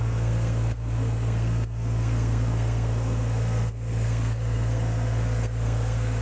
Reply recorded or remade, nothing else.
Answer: remade